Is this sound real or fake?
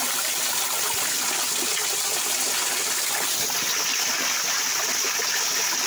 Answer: real